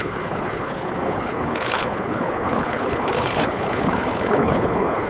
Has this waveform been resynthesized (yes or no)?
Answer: yes